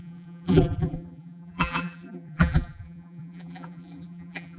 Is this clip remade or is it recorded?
remade